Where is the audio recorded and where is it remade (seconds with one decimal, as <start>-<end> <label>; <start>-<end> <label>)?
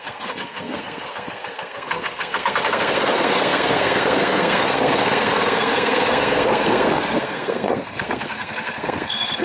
0.0-9.4 remade